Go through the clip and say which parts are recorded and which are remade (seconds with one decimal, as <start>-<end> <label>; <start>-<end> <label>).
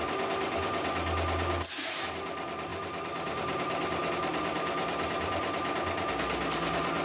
0.0-2.7 recorded; 2.7-4.1 remade; 4.1-7.0 recorded